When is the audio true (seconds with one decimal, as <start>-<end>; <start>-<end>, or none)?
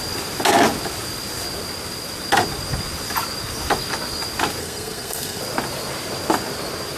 0.0-4.6; 5.4-7.0